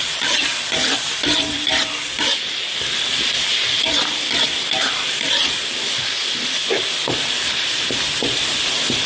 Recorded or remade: remade